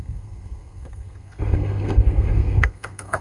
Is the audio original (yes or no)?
no